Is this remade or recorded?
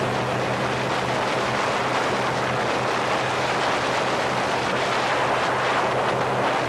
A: recorded